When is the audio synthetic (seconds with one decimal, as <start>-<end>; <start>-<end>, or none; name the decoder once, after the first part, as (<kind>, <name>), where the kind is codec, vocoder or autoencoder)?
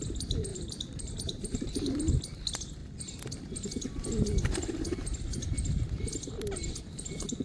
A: 0.0-2.8 (vocoder, BigVGAN v2); 6.8-7.4